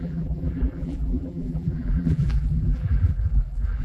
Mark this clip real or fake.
fake